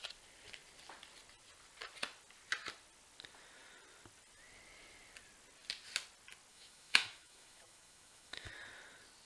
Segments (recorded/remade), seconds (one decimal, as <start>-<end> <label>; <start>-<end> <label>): 0.0-6.5 recorded; 6.5-8.5 remade; 8.5-9.3 recorded